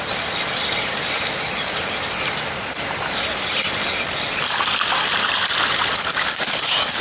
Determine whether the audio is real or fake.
fake